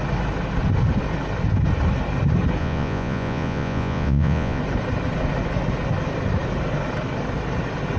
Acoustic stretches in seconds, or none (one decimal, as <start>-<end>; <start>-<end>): 0.0-2.6; 4.6-8.0